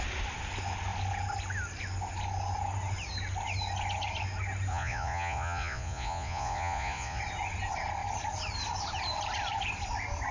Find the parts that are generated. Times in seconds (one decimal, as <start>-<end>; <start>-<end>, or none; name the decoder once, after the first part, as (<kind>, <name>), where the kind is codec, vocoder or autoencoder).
4.7-7.2 (vocoder, Vocos)